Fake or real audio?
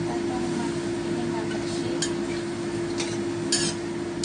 real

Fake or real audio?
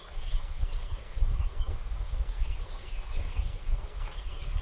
fake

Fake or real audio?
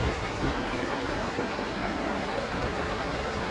fake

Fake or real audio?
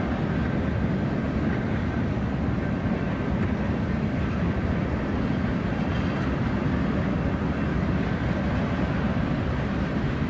real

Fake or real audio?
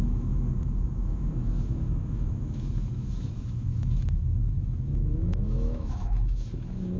fake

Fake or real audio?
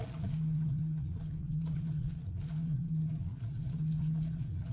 fake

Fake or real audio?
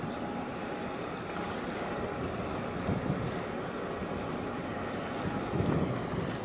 real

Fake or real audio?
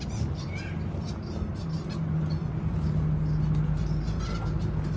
real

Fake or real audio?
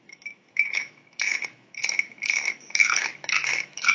fake